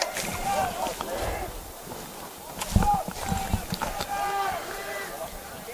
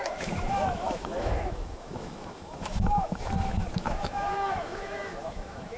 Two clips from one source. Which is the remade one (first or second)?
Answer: second